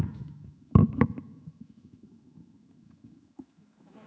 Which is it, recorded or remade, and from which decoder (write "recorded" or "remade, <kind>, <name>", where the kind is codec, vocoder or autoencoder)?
remade, autoencoder, DAC-VAE